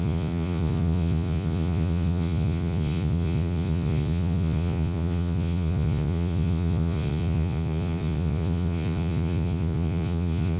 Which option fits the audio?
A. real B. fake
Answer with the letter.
B